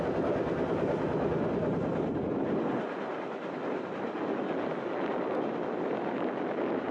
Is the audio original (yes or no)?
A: yes